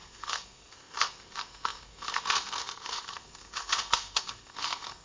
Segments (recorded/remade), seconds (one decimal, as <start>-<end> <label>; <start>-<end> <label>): 0.0-5.0 remade